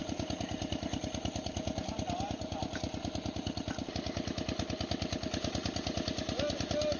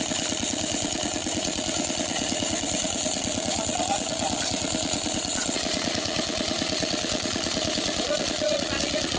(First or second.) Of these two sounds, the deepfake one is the second